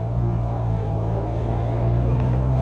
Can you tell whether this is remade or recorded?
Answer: remade